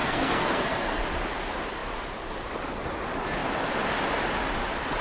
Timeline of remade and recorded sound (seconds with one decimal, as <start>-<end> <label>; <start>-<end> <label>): 0.0-1.0 remade; 1.0-5.0 recorded